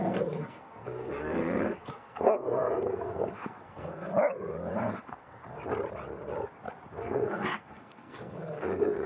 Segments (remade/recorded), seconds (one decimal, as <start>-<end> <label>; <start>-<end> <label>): 0.0-4.1 remade; 4.1-4.7 recorded; 4.7-5.4 remade; 5.4-6.9 recorded; 6.9-9.1 remade